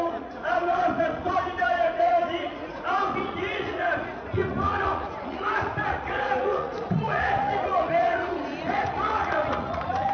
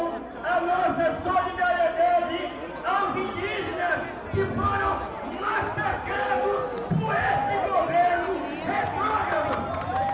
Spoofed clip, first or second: first